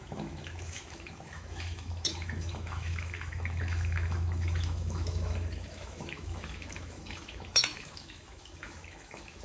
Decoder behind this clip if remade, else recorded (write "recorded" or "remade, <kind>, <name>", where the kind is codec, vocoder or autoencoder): remade, autoencoder, DAC-VAE